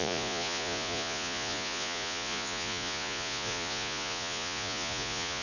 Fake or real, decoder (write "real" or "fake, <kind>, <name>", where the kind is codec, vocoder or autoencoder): fake, vocoder, Vocos